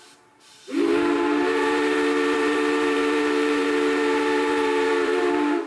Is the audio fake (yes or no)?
yes